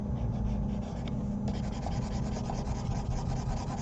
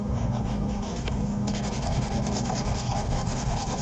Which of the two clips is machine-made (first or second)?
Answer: second